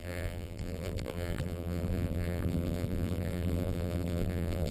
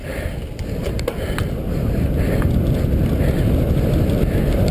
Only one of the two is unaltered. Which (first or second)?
second